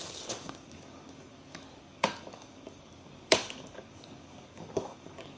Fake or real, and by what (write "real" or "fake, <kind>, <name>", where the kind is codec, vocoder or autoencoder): fake, codec, DAC